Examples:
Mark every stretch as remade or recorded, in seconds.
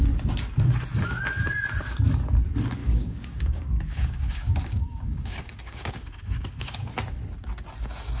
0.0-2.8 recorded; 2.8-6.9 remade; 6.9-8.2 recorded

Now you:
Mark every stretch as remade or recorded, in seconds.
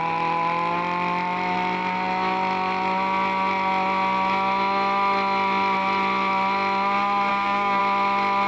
0.0-7.3 recorded; 7.3-7.8 remade; 7.8-8.5 recorded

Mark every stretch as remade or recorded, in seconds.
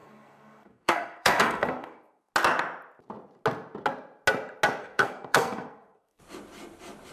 0.0-2.3 remade; 2.3-4.8 recorded; 4.8-6.2 remade; 6.2-7.1 recorded